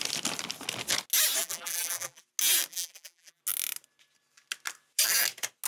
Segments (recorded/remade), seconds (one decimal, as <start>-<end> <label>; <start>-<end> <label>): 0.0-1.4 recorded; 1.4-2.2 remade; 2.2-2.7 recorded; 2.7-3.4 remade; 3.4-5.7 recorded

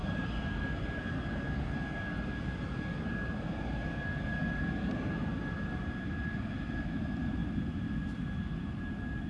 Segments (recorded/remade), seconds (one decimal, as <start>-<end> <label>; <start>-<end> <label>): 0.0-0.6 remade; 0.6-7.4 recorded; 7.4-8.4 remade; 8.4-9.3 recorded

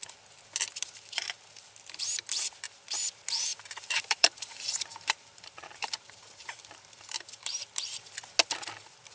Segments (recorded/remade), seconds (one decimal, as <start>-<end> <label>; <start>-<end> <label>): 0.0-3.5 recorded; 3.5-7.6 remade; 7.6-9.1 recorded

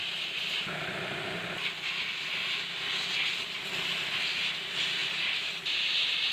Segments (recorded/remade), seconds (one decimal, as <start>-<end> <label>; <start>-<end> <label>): 0.0-1.5 remade; 1.5-5.0 recorded; 5.0-5.5 remade; 5.5-6.3 recorded

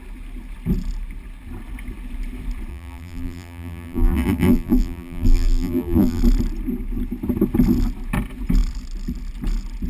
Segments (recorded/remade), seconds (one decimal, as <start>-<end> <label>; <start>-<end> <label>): 0.0-2.7 recorded; 2.7-6.2 remade; 6.2-9.9 recorded